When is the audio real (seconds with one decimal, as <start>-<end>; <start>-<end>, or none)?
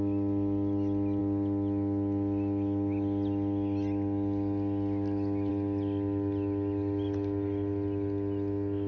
0.0-8.9